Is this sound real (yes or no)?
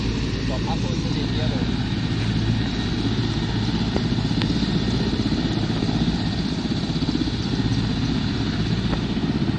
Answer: yes